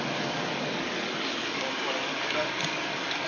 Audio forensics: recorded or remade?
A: remade